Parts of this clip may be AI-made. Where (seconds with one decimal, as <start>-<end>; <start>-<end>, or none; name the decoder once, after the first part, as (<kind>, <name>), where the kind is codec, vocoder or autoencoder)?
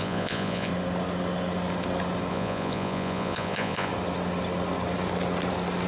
0.0-0.7 (vocoder, Vocos); 2.3-3.9